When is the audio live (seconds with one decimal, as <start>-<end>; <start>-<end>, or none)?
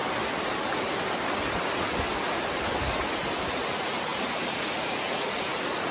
0.0-3.5